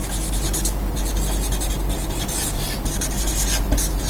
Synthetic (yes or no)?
no